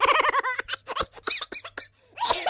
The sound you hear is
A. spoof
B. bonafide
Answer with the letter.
B